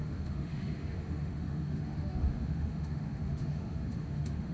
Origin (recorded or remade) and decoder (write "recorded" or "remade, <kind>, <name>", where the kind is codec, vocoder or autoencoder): remade, autoencoder, DAC-VAE